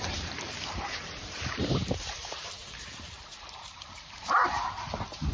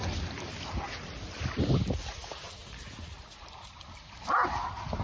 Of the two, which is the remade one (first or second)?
first